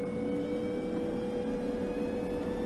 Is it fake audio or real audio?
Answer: real